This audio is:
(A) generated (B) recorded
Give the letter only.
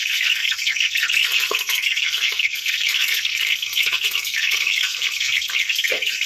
A